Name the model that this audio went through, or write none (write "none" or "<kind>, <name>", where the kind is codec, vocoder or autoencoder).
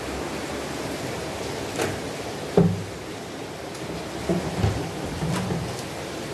none